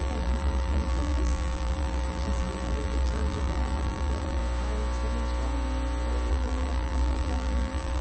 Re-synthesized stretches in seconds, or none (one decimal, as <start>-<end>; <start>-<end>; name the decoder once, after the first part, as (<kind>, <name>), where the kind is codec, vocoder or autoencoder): 0.0-4.4 (vocoder, BigVGAN v2); 6.3-8.0